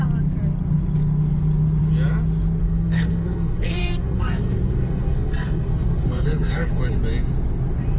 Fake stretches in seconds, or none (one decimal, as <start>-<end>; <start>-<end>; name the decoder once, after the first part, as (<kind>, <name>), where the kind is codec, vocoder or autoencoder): 2.6-6.8 (codec, SNAC)